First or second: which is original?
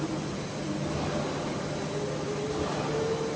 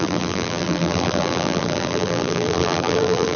first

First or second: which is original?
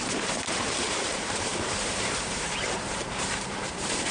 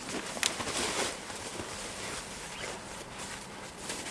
second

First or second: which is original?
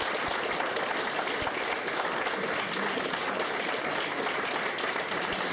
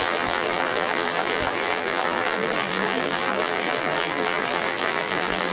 first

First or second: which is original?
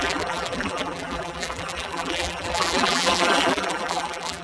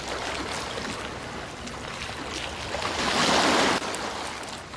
second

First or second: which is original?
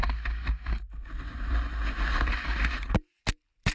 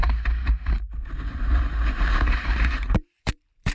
first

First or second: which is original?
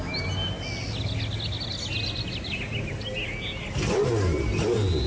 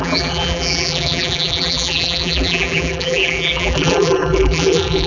first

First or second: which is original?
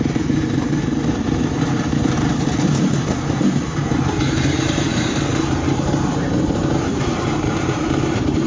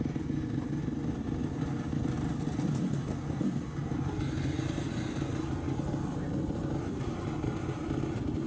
second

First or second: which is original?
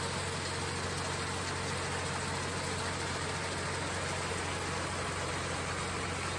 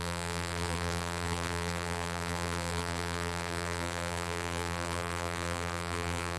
first